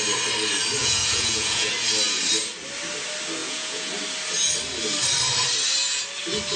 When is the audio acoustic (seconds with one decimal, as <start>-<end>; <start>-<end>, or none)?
0.0-0.8; 1.7-3.4; 3.9-6.6

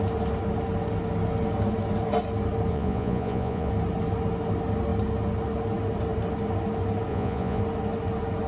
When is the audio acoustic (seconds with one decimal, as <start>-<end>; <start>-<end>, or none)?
0.0-2.7; 3.7-7.1; 7.6-8.5

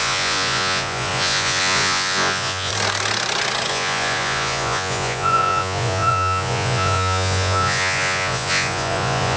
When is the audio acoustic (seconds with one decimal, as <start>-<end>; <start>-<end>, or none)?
2.7-3.7

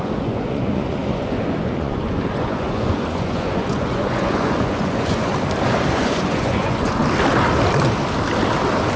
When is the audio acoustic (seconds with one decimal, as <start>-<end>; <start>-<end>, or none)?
5.3-5.9; 7.0-9.0

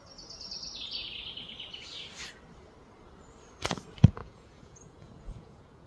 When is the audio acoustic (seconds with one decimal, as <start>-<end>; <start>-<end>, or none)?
0.0-4.2

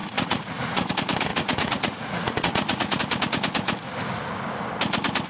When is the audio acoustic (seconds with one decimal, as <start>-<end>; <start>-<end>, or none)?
0.9-1.3; 3.0-5.3

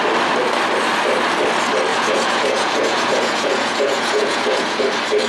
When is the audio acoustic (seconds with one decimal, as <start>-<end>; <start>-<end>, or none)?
0.0-1.9; 4.8-5.3

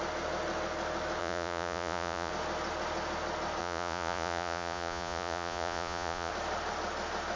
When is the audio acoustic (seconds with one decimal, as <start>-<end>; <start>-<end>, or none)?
0.0-1.2; 2.3-3.6; 6.3-7.4